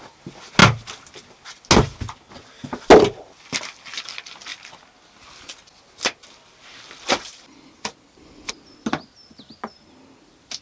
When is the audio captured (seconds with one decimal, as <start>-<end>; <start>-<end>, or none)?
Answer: 0.0-10.6